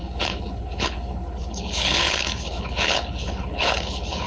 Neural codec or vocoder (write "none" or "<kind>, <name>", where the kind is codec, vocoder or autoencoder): codec, HILCodec